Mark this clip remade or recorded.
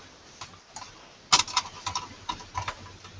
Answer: recorded